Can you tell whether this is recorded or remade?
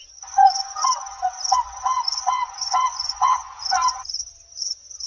remade